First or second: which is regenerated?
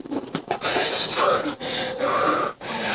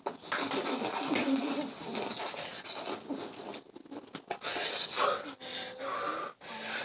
first